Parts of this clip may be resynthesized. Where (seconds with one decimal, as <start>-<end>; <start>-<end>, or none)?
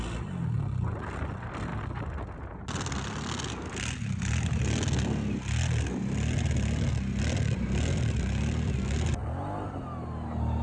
none